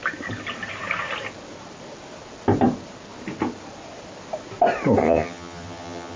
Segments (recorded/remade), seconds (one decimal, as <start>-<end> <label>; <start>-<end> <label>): 0.0-5.0 recorded; 5.0-6.2 remade